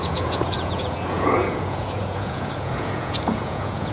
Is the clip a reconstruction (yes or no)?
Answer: yes